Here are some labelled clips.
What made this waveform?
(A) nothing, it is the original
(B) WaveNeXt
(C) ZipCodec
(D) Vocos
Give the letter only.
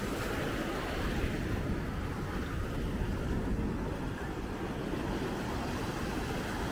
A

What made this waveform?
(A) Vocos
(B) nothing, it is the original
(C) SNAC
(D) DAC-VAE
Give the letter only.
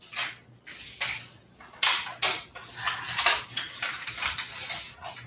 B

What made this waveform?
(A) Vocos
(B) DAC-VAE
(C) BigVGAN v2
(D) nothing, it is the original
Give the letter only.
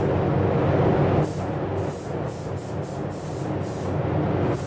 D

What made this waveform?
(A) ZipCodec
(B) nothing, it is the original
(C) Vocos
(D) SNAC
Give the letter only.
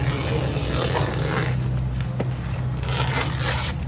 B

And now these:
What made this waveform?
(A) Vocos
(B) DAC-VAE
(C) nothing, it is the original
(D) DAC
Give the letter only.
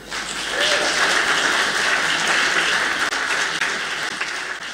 C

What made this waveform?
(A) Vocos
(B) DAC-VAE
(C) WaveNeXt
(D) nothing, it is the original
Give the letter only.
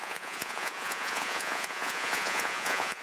A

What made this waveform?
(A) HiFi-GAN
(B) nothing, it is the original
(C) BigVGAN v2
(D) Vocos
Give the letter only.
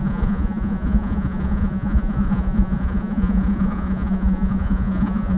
D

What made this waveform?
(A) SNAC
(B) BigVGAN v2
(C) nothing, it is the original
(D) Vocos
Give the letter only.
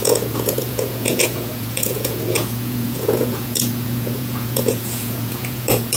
D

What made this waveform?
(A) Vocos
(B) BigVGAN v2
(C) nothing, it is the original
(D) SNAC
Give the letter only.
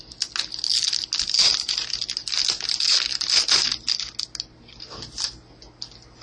C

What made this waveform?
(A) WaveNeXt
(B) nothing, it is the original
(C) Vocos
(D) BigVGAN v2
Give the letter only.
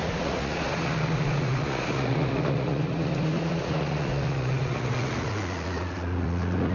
C